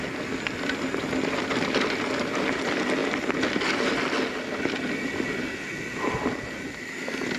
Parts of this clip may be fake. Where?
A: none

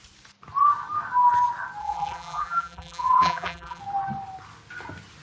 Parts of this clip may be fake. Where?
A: 1.8-3.8 (vocoder, BigVGAN v2)

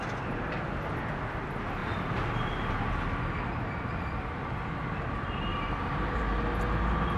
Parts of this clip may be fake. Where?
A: 1.8-2.9 (vocoder, BigVGAN v2); 5.5-6.2